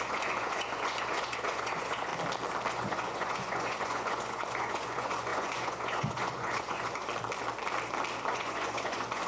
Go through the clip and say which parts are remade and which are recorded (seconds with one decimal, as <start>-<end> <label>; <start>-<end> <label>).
0.0-2.1 remade; 2.1-2.7 recorded; 2.7-7.0 remade; 7.0-8.3 recorded; 8.3-9.3 remade